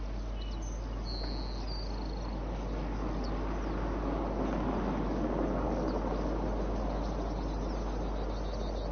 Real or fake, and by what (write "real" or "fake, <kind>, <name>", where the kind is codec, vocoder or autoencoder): real